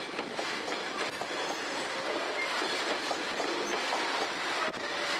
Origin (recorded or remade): recorded